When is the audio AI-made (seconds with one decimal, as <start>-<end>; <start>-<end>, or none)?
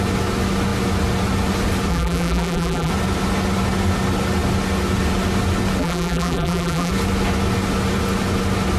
1.9-2.9; 5.8-6.9